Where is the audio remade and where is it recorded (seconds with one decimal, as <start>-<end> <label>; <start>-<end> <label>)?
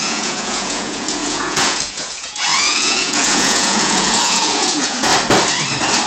0.0-5.1 remade; 5.1-6.1 recorded